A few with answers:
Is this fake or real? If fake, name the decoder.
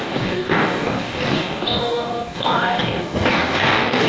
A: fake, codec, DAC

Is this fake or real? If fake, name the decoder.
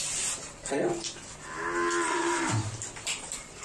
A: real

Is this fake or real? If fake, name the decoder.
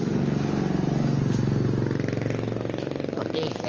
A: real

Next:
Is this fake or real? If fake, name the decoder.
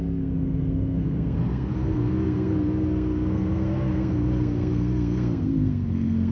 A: fake, codec, SNAC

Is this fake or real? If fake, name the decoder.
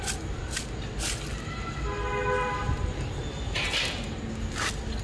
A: real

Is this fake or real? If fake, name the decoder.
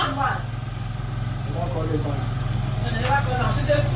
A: real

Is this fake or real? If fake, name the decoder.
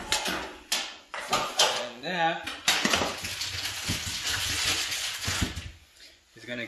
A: fake, vocoder, Vocos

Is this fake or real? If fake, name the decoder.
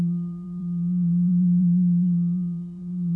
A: fake, vocoder, BigVGAN v2